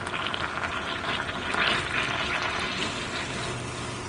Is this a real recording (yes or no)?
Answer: no